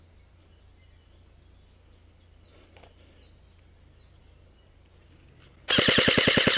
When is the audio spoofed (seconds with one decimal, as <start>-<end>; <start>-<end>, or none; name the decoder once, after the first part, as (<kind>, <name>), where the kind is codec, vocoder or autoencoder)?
none